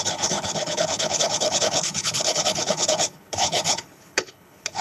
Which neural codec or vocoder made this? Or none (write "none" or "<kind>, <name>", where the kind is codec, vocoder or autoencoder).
codec, HILCodec